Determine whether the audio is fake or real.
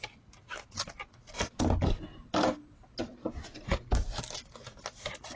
real